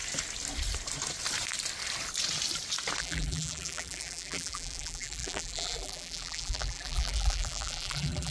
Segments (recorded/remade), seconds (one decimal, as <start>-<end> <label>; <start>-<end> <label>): 0.0-3.0 recorded; 3.0-8.3 remade